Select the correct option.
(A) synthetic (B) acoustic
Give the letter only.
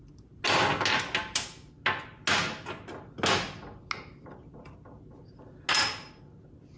B